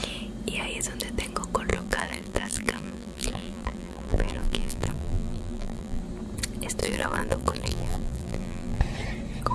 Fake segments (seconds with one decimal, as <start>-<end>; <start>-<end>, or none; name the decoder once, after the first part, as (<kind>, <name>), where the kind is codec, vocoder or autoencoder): 1.7-6.0 (vocoder, BigVGAN v2); 6.8-8.8